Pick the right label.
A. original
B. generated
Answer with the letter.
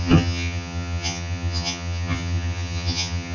B